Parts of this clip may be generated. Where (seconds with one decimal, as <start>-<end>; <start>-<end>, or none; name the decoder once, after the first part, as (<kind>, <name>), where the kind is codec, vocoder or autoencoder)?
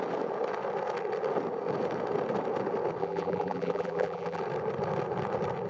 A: 3.0-4.4 (vocoder, BigVGAN v2)